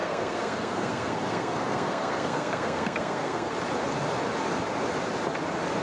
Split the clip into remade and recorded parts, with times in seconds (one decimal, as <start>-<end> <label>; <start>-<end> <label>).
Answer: 0.0-3.5 remade; 3.5-5.8 recorded